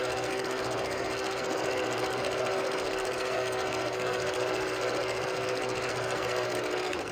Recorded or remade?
remade